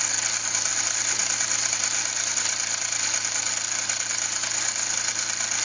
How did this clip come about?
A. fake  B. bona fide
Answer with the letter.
B